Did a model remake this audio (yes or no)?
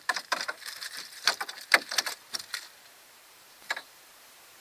yes